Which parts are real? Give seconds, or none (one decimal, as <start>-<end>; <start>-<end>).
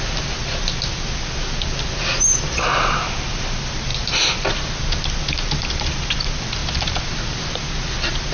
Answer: 0.0-8.3